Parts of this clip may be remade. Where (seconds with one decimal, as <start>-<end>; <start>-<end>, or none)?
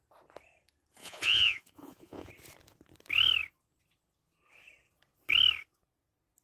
1.0-2.3